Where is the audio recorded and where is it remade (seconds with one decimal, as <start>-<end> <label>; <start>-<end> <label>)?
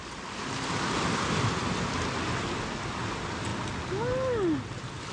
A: 0.0-5.1 recorded